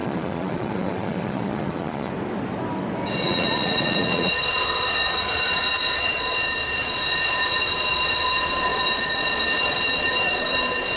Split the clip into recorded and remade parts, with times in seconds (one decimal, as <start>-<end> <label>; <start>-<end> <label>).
0.0-2.1 remade; 2.1-3.2 recorded; 3.2-11.0 remade